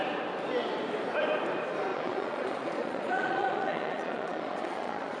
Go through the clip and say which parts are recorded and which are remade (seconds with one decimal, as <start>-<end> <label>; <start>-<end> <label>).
0.0-1.9 recorded; 1.9-5.2 remade